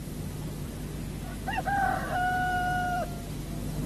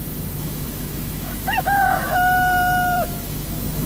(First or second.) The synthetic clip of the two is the second